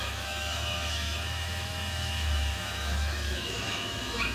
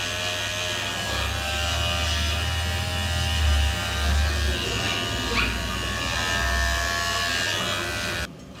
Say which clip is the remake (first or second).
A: first